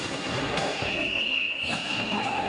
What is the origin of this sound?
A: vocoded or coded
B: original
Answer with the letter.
A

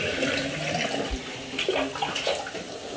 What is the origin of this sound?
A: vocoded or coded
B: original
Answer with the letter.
B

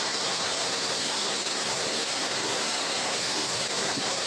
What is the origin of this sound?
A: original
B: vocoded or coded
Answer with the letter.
B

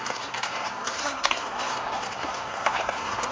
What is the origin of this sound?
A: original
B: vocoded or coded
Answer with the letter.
B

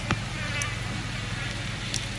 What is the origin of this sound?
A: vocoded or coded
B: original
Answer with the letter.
B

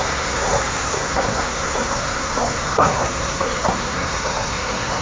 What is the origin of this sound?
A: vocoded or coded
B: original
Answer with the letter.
A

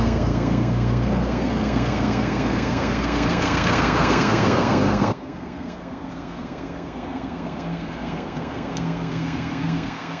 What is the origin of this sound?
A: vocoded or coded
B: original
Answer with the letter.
A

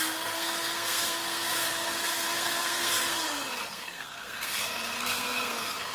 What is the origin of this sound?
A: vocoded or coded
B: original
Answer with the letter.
A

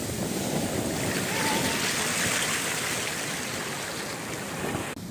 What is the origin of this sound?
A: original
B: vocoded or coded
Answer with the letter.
A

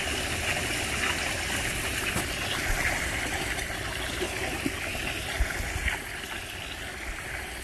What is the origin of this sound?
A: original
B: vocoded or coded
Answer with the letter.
A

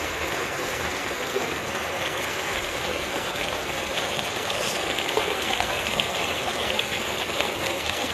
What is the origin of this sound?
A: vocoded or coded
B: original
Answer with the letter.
A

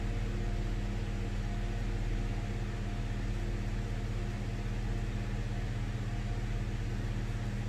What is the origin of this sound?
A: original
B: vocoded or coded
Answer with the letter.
A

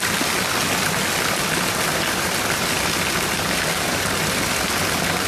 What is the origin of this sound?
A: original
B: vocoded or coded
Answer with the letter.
A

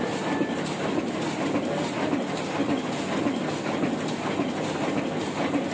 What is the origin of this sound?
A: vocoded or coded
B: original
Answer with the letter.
B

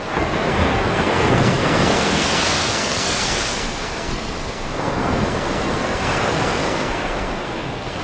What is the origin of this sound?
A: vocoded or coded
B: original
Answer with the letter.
A